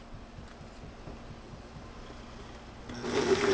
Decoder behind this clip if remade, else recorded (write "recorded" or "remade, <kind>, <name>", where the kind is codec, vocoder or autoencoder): recorded